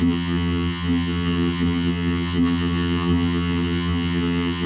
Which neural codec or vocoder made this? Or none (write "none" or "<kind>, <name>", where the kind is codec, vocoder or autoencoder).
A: vocoder, HiFi-GAN